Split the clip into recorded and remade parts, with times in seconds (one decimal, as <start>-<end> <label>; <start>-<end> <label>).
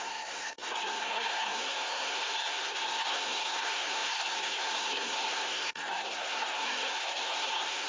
0.0-7.9 remade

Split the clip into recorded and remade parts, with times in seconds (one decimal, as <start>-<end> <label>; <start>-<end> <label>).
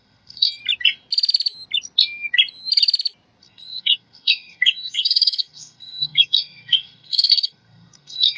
0.0-0.6 remade; 0.6-3.4 recorded; 3.4-8.4 remade